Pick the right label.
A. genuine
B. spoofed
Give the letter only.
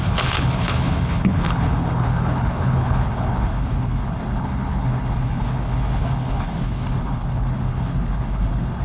B